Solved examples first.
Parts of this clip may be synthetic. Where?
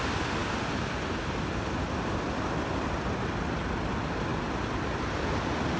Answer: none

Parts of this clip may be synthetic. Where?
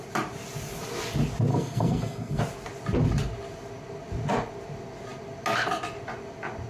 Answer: 1.5-2.4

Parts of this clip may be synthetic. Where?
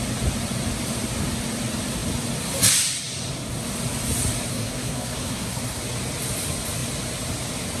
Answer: 4.5-5.8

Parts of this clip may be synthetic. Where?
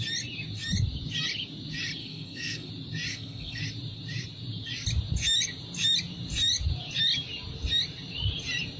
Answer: 2.0-2.7; 3.1-3.6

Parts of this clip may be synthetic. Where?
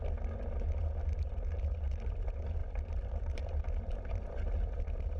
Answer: none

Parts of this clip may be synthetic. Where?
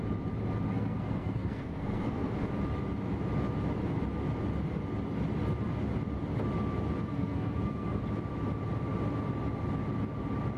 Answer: 0.7-2.3; 7.0-8.0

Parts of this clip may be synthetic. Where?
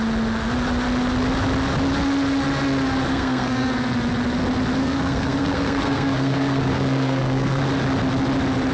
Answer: 3.1-3.7; 4.8-7.6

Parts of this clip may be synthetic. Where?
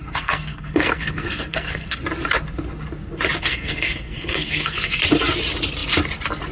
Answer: 0.0-2.0; 3.4-5.0